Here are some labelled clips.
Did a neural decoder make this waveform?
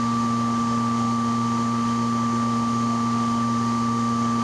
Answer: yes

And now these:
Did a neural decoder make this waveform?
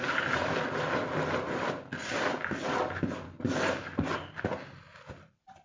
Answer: no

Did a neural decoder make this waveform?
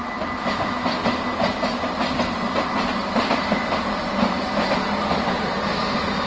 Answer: no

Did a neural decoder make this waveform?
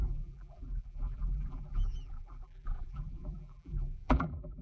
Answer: yes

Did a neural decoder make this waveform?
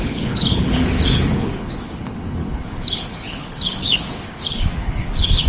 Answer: yes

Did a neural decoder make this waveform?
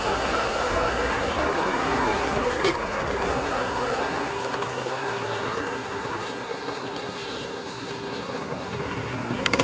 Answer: yes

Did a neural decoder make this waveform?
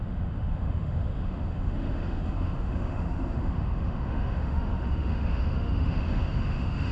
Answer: yes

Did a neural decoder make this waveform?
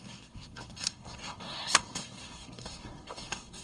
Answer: yes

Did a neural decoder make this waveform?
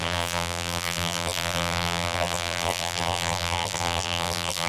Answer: yes